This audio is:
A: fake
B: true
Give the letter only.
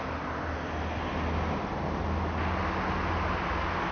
B